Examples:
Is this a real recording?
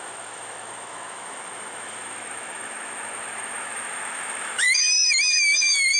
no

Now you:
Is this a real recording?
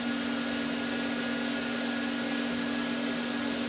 yes